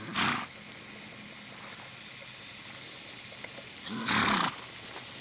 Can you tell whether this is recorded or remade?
recorded